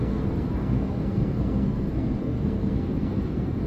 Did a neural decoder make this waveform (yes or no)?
yes